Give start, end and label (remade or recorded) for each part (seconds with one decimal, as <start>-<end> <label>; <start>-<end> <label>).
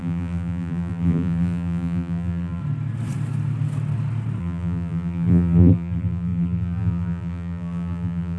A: 0.0-2.6 remade; 2.6-4.4 recorded; 4.4-8.4 remade